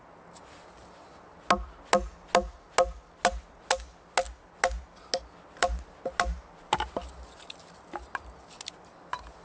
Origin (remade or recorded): recorded